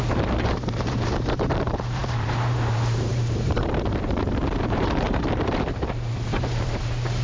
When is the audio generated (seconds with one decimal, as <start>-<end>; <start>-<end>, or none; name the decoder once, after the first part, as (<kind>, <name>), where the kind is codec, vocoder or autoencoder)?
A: 0.0-7.2 (vocoder, BigVGAN v2)